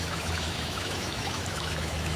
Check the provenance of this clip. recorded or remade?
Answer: remade